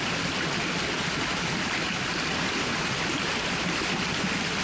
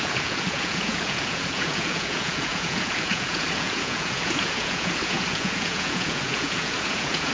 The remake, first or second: second